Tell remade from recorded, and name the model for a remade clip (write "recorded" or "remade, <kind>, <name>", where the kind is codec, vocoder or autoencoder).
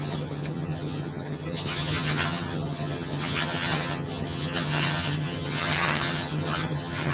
remade, vocoder, HiFi-GAN